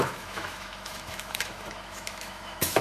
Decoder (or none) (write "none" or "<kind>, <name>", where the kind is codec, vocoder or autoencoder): autoencoder, DAC-VAE